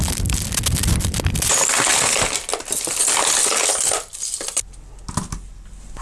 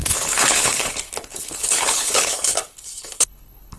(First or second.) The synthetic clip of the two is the second